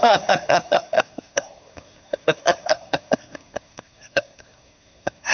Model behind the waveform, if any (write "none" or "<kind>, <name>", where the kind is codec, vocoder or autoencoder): codec, SNAC